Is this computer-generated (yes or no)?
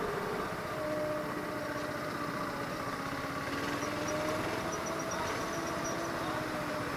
no